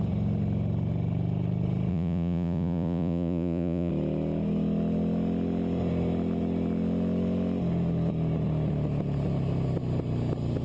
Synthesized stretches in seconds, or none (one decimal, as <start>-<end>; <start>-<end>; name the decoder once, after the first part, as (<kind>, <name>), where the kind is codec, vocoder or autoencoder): 1.9-3.9 (vocoder, Vocos)